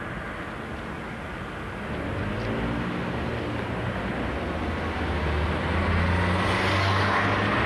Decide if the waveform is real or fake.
real